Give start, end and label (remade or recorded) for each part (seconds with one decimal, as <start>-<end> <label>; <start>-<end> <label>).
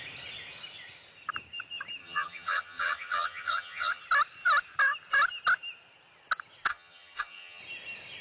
0.0-2.0 recorded; 2.0-4.0 remade; 4.0-6.7 recorded; 6.7-7.6 remade; 7.6-8.2 recorded